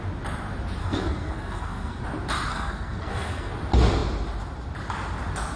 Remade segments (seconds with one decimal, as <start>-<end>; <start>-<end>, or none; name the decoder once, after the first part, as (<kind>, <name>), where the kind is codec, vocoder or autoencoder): 0.8-2.0 (codec, SNAC); 2.5-3.5